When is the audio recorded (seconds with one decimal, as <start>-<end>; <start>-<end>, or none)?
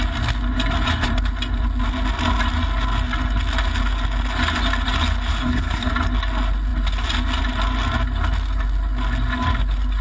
0.0-5.3; 5.9-10.0